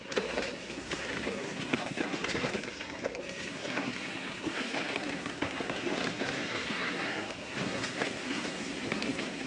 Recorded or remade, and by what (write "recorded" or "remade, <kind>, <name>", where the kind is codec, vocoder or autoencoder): remade, codec, SNAC